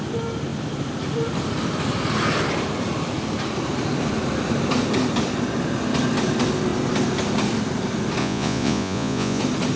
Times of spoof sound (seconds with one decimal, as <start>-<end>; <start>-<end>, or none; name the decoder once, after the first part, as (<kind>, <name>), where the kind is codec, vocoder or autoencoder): 8.2-9.4 (vocoder, Vocos)